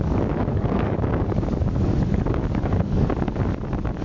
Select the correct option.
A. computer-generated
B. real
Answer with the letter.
A